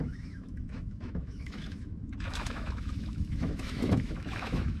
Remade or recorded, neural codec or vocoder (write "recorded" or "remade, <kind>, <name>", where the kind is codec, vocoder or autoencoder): remade, autoencoder, DAC-VAE